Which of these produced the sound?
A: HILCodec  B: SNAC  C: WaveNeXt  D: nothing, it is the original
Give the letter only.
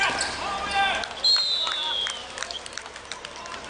D